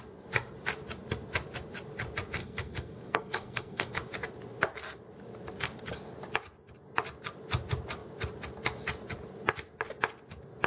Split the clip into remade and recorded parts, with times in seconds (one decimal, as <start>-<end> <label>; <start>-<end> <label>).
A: 0.0-2.4 recorded; 2.4-3.9 remade; 3.9-10.7 recorded